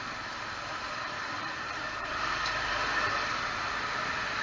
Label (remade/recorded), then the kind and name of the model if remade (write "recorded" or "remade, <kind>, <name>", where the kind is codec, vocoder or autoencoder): recorded